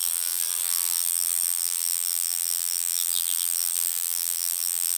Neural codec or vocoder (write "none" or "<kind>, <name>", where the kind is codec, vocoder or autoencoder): vocoder, BigVGAN v2